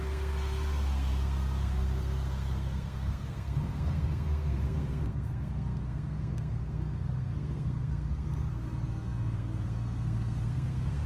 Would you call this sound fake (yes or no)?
yes